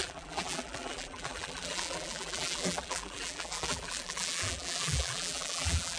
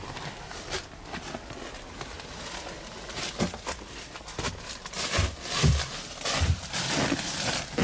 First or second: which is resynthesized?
first